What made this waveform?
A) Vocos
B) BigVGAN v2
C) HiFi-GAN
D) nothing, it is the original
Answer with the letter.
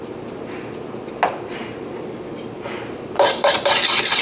D